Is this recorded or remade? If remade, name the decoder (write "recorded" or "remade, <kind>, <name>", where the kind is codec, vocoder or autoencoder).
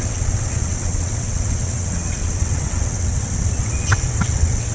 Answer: remade, vocoder, WaveNeXt